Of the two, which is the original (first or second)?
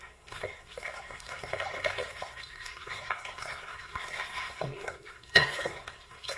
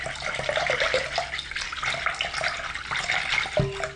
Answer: second